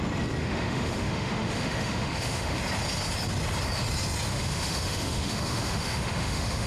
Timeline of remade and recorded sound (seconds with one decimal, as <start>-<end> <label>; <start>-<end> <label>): 0.0-0.4 recorded; 0.4-2.6 remade; 2.6-4.3 recorded; 4.3-6.7 remade